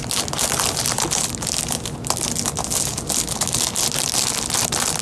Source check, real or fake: real